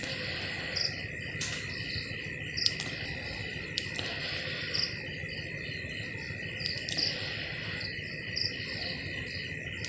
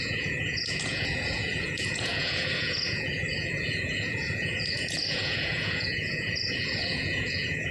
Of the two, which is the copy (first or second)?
second